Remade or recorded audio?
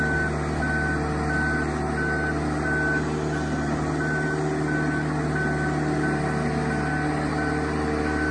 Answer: recorded